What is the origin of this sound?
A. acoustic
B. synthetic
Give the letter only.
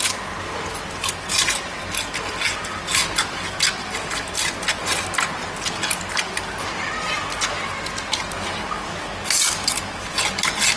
A